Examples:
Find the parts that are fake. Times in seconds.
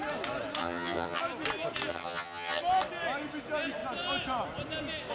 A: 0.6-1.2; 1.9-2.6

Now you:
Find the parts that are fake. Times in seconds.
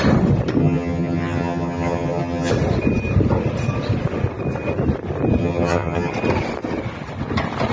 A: 0.6-2.5; 5.4-6.1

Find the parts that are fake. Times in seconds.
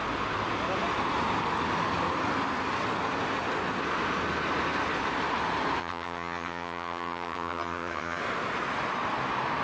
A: 5.8-8.2